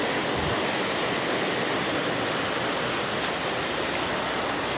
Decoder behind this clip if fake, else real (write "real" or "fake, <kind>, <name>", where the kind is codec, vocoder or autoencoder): real